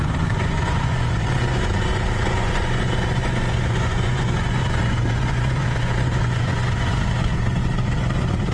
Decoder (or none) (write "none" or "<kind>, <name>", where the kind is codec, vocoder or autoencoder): vocoder, Vocos